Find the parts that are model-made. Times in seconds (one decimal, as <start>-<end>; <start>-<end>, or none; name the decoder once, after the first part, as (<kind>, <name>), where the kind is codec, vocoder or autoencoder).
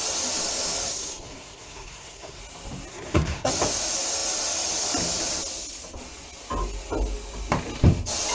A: 0.9-2.4 (codec, SNAC); 2.9-3.5